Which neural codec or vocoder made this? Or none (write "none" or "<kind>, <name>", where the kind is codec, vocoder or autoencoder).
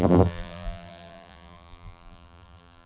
vocoder, BigVGAN v2